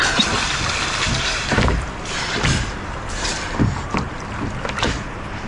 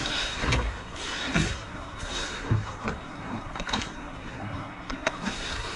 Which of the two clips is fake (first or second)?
second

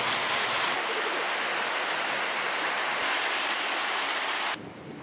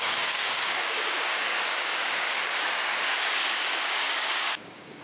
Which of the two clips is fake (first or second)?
second